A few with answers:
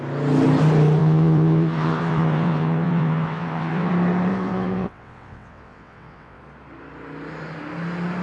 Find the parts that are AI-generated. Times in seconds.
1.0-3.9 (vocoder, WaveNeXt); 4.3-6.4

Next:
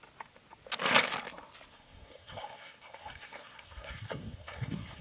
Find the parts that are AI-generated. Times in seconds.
1.7-5.0 (codec, SNAC)

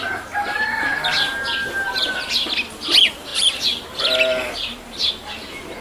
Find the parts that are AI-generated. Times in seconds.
0.9-2.0 (vocoder, BigVGAN v2); 3.3-5.1

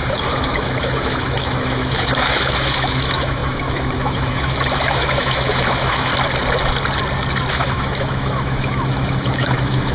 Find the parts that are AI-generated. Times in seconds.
0.0-6.1 (autoencoder, DAC-VAE); 7.5-9.9

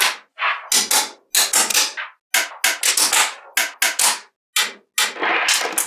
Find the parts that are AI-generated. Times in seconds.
none